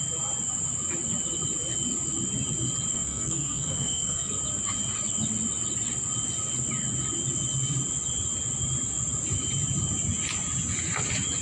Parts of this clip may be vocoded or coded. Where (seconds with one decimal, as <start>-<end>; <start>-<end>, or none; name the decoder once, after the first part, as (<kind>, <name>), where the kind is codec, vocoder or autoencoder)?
2.9-4.3 (codec, SNAC)